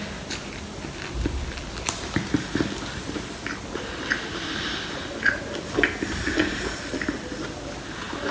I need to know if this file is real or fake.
real